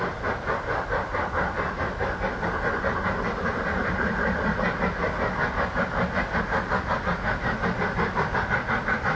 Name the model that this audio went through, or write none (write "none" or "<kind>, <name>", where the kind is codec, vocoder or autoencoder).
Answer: none